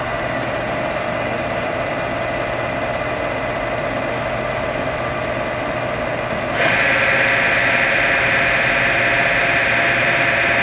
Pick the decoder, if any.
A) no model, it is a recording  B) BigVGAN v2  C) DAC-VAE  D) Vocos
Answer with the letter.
A